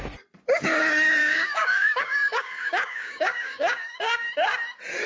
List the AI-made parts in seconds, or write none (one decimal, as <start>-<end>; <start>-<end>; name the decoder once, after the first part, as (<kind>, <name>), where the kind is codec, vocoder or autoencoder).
1.2-4.3 (codec, DAC)